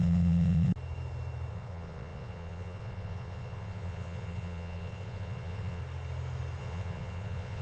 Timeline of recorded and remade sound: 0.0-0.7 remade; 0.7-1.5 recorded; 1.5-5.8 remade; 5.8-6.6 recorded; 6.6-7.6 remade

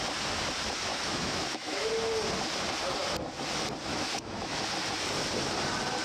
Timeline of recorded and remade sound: 0.0-0.9 recorded; 0.9-1.9 remade; 1.9-3.9 recorded; 3.9-4.6 remade; 4.6-6.0 recorded

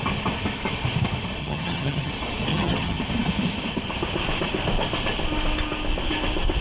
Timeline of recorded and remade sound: 0.0-1.4 recorded; 1.4-2.1 remade; 2.1-2.5 recorded; 2.5-3.0 remade; 3.0-6.6 recorded

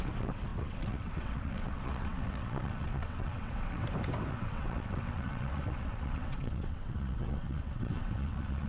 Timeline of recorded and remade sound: 0.0-3.8 remade; 3.8-4.3 recorded; 4.3-8.7 remade

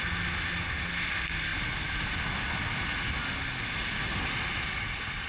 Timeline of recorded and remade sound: 0.0-5.3 recorded

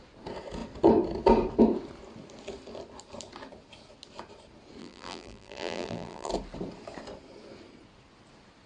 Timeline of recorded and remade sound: 0.0-4.8 recorded; 4.8-6.3 remade; 6.3-8.7 recorded

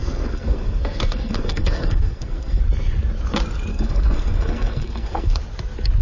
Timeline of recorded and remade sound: 0.0-2.6 remade; 2.6-3.7 recorded; 3.7-5.4 remade; 5.4-6.0 recorded

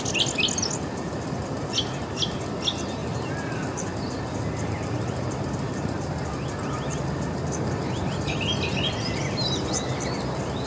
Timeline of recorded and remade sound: 0.0-10.7 recorded